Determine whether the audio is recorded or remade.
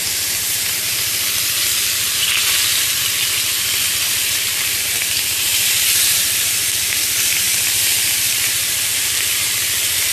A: remade